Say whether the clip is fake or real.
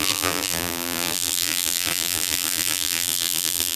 fake